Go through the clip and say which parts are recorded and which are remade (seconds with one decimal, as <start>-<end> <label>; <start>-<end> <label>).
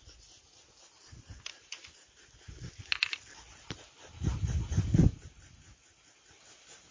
0.0-6.9 recorded